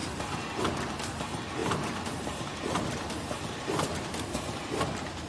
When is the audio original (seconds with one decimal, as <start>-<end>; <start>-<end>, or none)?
0.0-1.6; 4.8-5.3